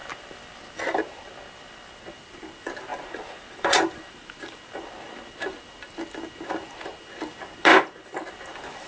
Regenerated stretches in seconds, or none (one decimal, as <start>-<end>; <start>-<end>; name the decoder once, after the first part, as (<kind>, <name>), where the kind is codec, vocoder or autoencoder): 2.9-4.3 (vocoder, BigVGAN v2)